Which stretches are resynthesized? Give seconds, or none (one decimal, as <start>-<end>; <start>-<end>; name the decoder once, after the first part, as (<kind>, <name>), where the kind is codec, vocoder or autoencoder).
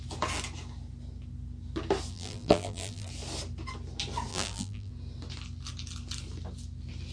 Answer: 2.1-3.1 (vocoder, BigVGAN v2); 4.3-4.9